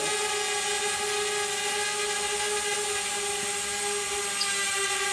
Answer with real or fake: real